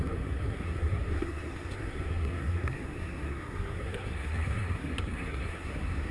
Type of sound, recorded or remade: remade